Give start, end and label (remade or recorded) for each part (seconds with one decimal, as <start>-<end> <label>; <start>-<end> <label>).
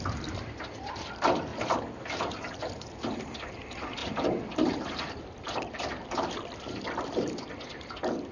0.0-1.5 remade; 1.5-3.2 recorded; 3.2-8.3 remade